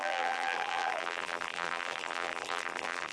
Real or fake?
fake